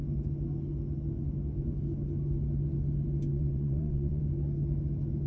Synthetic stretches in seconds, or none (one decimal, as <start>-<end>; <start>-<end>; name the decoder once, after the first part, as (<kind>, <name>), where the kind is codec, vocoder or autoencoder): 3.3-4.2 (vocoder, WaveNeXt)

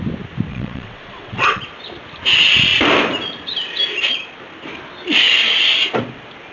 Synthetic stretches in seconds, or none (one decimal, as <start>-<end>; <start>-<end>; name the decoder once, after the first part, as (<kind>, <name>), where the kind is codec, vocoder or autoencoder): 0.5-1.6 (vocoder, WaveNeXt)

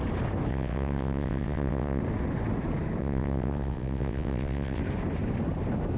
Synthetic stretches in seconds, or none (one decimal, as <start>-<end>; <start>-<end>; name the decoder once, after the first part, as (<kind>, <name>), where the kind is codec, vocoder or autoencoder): 0.5-2.0 (vocoder, WaveNeXt); 3.0-4.8